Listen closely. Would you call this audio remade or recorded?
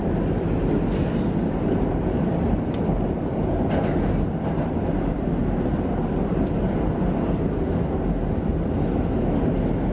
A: recorded